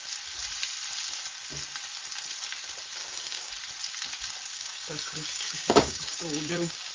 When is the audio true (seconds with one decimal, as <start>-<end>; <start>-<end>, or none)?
0.0-3.0; 3.5-4.5